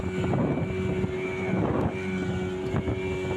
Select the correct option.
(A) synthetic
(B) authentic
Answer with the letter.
B